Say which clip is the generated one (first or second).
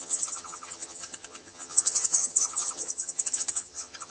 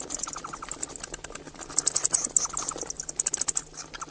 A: first